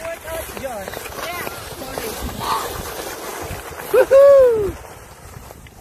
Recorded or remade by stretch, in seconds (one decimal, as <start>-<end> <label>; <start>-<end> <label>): 0.0-5.8 recorded